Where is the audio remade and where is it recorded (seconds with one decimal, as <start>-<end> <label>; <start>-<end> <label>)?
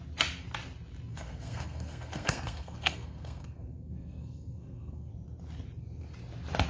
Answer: 0.0-1.1 recorded; 1.1-5.1 remade; 5.1-6.7 recorded